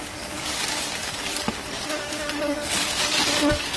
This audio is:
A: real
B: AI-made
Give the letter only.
B